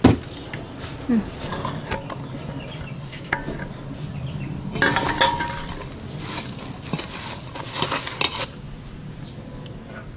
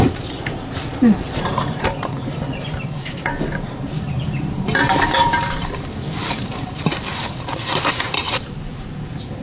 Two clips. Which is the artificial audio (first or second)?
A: second